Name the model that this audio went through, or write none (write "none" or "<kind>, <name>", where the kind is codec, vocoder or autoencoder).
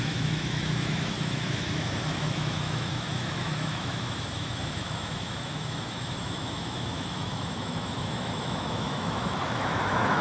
autoencoder, DAC-VAE